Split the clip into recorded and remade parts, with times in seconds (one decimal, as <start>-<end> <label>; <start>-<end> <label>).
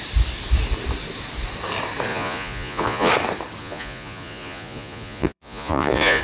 0.0-2.1 recorded; 2.1-3.1 remade; 3.1-3.6 recorded; 3.6-6.2 remade